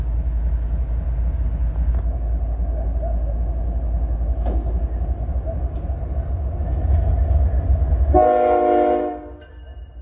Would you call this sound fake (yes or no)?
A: no